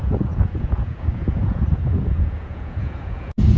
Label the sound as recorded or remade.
remade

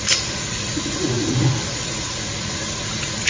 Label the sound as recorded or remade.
remade